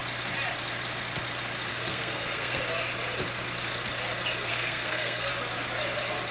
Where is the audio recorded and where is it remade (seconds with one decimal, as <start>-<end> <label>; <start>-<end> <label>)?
0.0-1.7 recorded; 1.7-2.6 remade; 2.6-4.5 recorded; 4.5-5.3 remade; 5.3-6.3 recorded